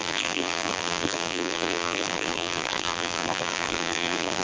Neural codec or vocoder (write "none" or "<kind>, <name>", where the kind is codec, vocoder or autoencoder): vocoder, BigVGAN v2